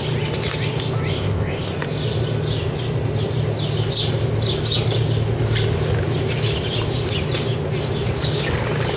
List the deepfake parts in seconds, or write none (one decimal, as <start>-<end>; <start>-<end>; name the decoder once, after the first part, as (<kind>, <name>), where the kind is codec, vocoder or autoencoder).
1.1-1.7 (codec, ZipCodec)

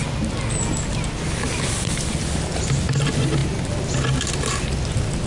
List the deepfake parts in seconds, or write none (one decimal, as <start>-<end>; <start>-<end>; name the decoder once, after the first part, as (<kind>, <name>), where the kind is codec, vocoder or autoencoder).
none

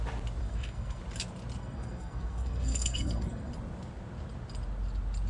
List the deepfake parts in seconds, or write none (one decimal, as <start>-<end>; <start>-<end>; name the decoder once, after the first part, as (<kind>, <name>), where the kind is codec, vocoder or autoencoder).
0.4-1.0 (codec, SNAC); 1.6-3.5

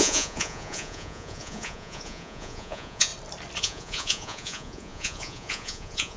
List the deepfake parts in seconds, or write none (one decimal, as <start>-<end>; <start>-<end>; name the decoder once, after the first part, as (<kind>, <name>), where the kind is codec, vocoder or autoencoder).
0.0-3.1 (vocoder, Vocos); 3.6-6.2

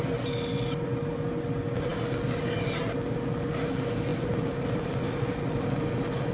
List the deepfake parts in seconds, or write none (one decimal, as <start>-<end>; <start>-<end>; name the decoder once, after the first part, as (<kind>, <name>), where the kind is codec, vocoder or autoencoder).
none

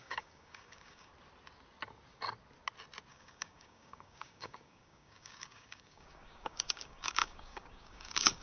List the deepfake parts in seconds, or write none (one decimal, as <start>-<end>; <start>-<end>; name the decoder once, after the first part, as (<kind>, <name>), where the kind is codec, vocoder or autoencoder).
0.0-1.1 (codec, DAC); 3.1-8.4